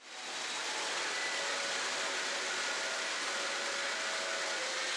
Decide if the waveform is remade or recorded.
recorded